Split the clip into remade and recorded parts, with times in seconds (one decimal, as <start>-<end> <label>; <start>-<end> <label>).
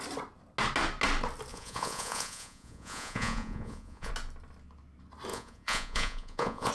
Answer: 0.0-1.5 recorded; 1.5-4.1 remade; 4.1-5.3 recorded; 5.3-6.7 remade